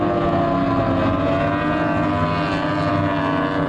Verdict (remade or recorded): recorded